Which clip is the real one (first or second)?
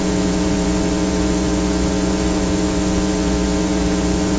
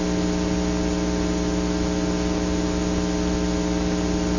second